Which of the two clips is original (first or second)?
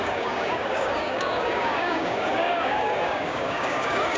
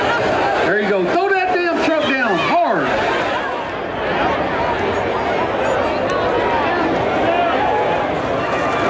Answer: second